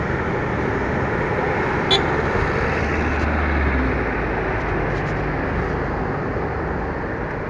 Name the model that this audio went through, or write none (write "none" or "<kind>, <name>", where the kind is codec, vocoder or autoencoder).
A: none